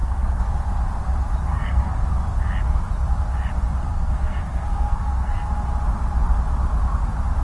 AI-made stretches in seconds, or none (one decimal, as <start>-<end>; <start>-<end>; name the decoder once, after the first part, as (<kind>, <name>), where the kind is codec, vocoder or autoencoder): 0.0-0.5 (codec, SNAC); 1.5-2.1; 3.9-5.5